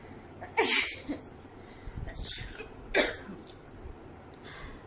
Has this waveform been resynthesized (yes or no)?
no